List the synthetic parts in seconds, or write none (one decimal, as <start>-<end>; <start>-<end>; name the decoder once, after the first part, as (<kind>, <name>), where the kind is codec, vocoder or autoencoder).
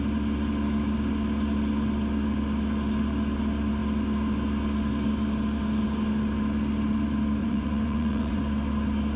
7.4-8.4 (vocoder, Vocos)